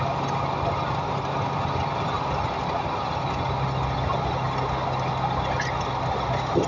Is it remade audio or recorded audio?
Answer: recorded